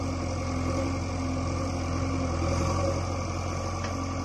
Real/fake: real